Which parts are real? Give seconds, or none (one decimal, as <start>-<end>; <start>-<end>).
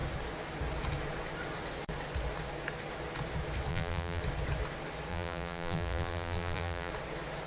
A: 0.0-3.7; 4.2-5.1; 6.9-7.5